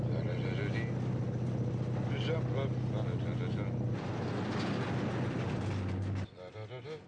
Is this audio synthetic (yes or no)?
no